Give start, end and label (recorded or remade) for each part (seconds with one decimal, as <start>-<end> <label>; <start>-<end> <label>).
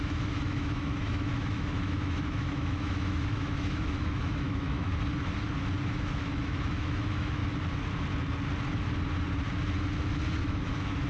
0.0-4.9 remade; 4.9-5.9 recorded; 5.9-7.4 remade; 7.4-10.4 recorded; 10.4-11.1 remade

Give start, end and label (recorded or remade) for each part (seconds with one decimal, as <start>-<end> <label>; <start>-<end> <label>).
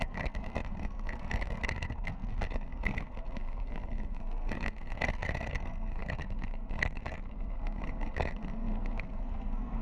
0.0-9.8 remade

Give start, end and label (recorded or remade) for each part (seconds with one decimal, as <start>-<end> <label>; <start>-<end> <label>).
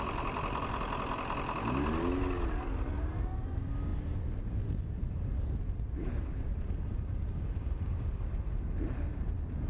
0.0-3.9 recorded; 3.9-5.4 remade; 5.4-9.7 recorded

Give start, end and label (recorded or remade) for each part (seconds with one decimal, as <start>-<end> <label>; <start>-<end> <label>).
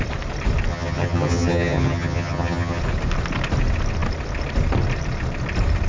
0.0-0.7 recorded; 0.7-2.8 remade; 2.8-5.9 recorded